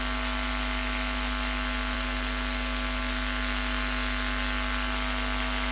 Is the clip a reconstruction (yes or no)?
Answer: no